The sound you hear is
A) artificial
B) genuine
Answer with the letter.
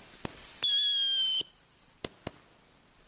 B